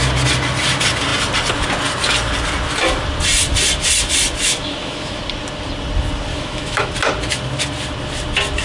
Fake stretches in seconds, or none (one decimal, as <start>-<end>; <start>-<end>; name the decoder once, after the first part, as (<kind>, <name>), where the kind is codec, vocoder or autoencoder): 4.4-5.2 (autoencoder, DAC-VAE); 6.3-6.9